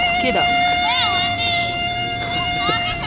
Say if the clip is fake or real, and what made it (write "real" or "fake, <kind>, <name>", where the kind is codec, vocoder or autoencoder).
real